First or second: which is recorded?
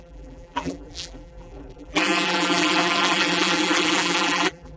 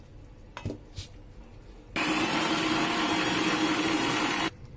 second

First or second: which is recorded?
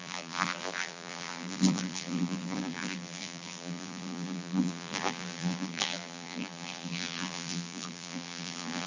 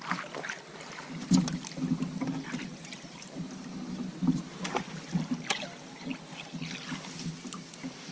second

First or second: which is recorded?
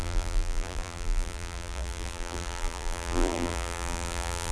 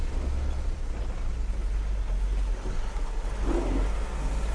second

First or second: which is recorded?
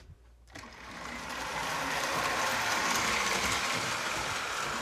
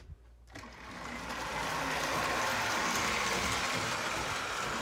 second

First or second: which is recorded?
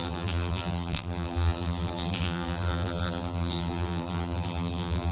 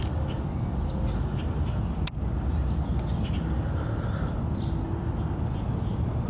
second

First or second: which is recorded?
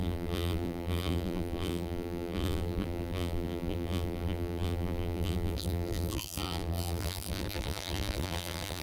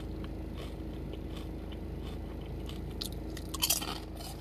second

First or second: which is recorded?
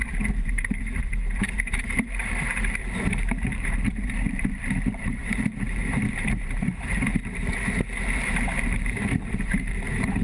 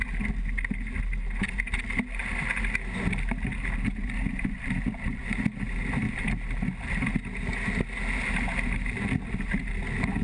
second